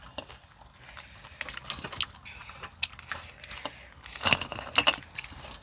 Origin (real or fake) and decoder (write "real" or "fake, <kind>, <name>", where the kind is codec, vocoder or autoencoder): real